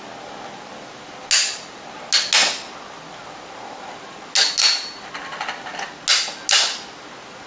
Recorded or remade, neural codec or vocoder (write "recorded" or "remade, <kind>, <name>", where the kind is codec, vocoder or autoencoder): recorded